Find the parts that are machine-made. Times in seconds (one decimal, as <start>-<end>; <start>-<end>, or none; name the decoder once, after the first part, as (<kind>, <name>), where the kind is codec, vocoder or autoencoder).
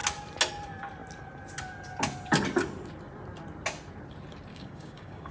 4.5-5.3 (codec, DAC)